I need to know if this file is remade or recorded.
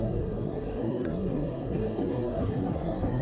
remade